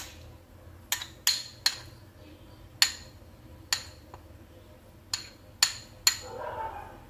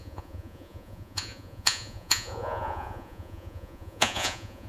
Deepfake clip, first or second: second